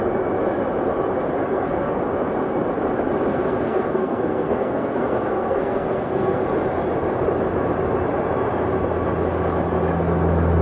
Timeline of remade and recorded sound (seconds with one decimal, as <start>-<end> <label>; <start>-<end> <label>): 0.0-1.4 recorded; 1.4-2.0 remade; 2.0-3.3 recorded; 3.3-6.4 remade; 6.4-10.6 recorded

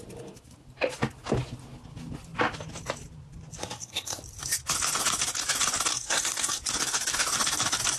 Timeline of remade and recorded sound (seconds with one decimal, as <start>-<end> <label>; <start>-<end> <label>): 0.0-3.6 recorded; 3.6-4.2 remade; 4.2-5.9 recorded; 5.9-6.6 remade; 6.6-8.0 recorded

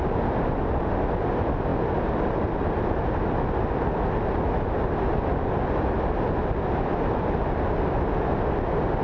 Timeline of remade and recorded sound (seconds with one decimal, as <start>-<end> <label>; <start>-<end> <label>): 0.0-9.0 recorded

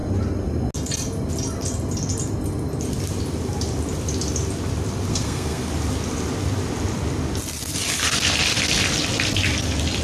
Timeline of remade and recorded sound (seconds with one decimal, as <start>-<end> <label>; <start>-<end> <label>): 0.0-5.1 recorded; 5.1-5.7 remade; 5.7-10.0 recorded

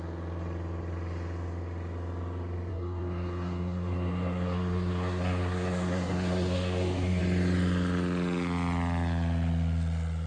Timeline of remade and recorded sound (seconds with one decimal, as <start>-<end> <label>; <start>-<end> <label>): 0.0-2.7 recorded; 2.7-7.2 remade; 7.2-10.3 recorded

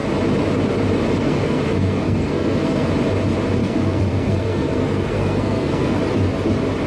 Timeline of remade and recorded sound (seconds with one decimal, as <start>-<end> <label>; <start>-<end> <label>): 0.0-1.2 recorded; 1.2-2.9 remade; 2.9-3.6 recorded; 3.6-6.0 remade; 6.0-6.9 recorded

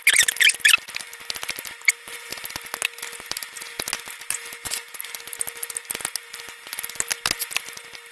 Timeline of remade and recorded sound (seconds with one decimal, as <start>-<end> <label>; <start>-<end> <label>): 0.0-8.1 recorded

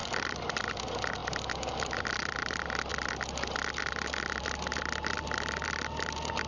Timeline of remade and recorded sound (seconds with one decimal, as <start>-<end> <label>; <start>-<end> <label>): 0.0-6.5 recorded